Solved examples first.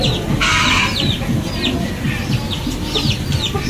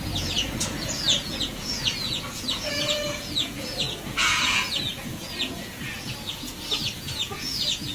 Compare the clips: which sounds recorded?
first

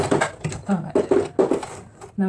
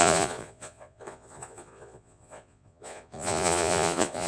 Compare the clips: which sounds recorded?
first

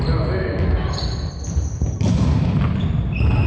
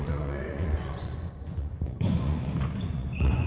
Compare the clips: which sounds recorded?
first